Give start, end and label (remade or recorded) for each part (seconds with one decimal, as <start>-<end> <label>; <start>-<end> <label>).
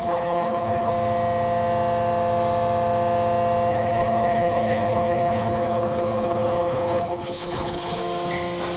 0.0-0.9 remade; 0.9-3.7 recorded; 3.7-8.0 remade; 8.0-8.8 recorded